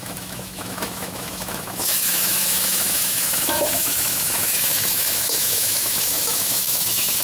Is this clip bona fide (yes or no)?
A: no